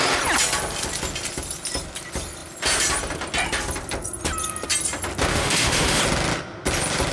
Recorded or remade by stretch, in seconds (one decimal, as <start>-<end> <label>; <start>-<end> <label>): 0.0-5.3 recorded; 5.3-6.0 remade; 6.0-7.1 recorded